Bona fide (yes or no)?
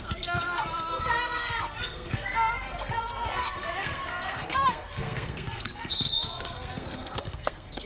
no